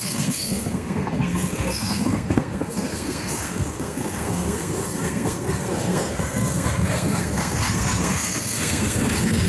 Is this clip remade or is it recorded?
remade